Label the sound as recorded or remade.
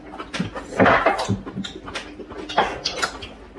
recorded